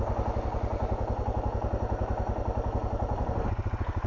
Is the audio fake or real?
real